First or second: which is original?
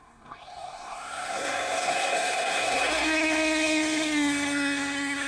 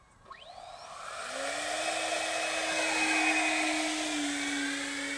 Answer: second